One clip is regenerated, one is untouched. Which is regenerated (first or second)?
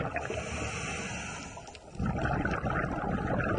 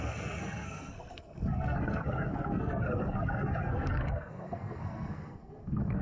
second